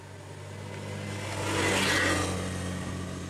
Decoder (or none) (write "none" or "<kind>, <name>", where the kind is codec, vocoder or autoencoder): none